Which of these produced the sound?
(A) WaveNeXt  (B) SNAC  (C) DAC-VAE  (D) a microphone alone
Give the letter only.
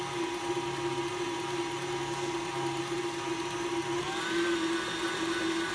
D